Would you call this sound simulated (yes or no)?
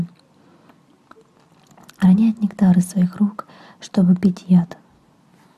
no